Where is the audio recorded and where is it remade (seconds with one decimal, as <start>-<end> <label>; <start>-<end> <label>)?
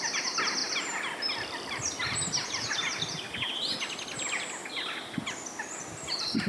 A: 0.0-6.5 recorded